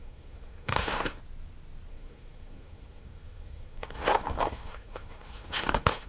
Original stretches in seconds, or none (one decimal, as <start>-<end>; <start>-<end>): 1.2-1.9